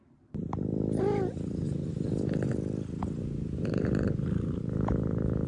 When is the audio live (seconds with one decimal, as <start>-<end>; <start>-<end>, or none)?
0.4-3.2